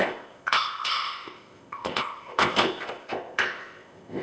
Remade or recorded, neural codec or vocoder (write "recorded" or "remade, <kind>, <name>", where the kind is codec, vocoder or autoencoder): remade, codec, ZipCodec